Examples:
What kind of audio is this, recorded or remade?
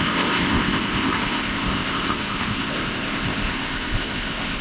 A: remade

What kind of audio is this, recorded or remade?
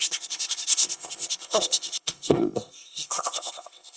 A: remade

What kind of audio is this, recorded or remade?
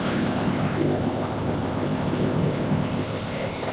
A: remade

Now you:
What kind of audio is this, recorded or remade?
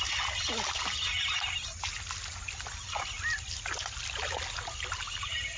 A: recorded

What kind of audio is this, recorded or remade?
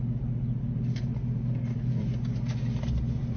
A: recorded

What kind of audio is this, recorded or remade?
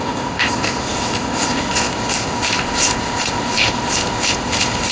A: remade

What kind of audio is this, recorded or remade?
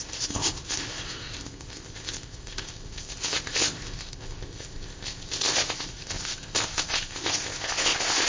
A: remade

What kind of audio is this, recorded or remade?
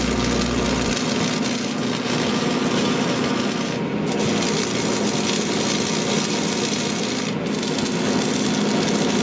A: recorded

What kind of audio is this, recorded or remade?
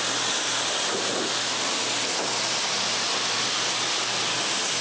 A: recorded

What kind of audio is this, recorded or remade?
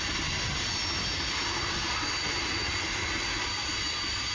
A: recorded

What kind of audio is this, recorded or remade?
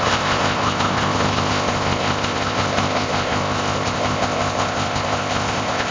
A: remade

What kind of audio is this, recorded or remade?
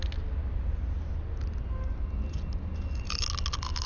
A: recorded